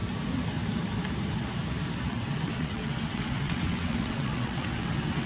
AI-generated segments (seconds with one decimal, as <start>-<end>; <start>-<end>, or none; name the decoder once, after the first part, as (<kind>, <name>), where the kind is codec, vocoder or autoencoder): 2.1-5.3 (vocoder, WaveNeXt)